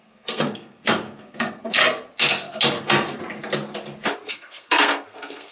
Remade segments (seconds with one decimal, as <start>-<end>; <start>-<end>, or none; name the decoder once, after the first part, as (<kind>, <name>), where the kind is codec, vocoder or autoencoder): 0.0-1.8 (codec, SNAC); 2.8-3.2; 4.3-5.5

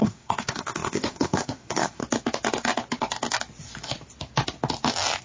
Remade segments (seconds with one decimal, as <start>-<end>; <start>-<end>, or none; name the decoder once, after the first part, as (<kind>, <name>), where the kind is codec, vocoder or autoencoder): 0.0-2.0 (codec, SNAC)

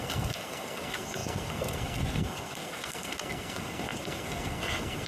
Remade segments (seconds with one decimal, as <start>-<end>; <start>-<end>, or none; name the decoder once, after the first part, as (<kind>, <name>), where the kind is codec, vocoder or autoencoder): 0.0-5.1 (codec, SNAC)

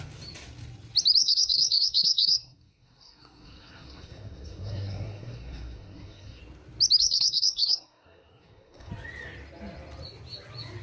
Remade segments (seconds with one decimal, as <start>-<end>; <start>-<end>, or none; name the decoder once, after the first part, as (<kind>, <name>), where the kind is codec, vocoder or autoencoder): 1.2-6.4 (codec, SNAC); 7.0-8.9

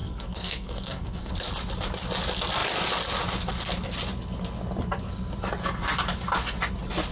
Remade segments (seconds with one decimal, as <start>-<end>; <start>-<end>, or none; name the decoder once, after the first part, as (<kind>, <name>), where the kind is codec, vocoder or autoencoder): 0.0-1.3 (codec, SNAC)